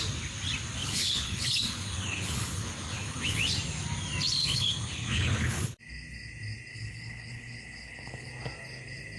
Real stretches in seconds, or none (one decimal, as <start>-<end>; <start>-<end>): 0.0-0.8; 3.4-4.4; 5.8-6.7; 8.3-9.2